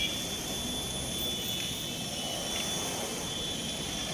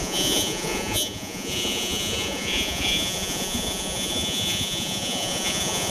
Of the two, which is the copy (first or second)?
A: second